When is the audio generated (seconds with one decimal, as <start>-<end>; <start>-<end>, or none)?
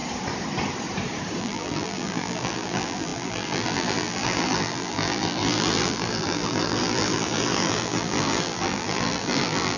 1.4-9.8